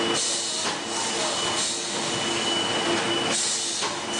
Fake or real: real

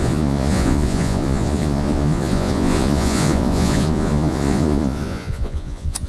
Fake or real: fake